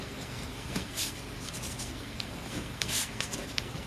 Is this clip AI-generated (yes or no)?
yes